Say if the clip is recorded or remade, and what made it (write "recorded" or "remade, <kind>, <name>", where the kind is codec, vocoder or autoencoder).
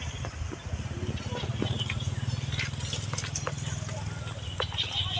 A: recorded